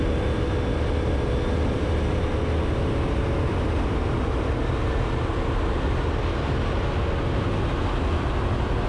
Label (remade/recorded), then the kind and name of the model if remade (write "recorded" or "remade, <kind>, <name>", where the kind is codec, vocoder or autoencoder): recorded